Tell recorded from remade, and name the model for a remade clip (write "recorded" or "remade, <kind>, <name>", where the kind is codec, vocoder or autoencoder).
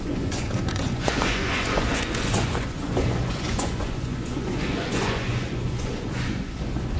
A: remade, vocoder, Vocos